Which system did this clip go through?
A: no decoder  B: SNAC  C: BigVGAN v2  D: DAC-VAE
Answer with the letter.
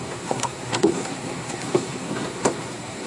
B